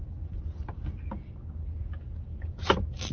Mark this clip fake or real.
real